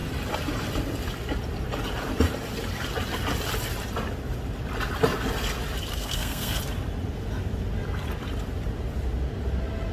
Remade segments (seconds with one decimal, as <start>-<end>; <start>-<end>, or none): 5.9-6.6

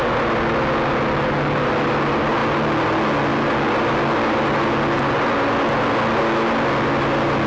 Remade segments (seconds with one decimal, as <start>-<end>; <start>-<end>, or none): none

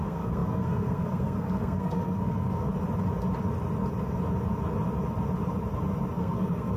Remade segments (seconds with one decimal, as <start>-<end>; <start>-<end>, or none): 0.0-2.7; 6.2-6.8

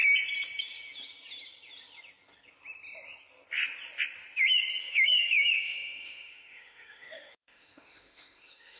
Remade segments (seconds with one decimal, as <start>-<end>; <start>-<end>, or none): 4.8-8.8

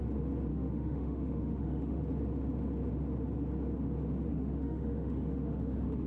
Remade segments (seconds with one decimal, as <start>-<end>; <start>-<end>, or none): 0.5-2.0; 4.3-6.1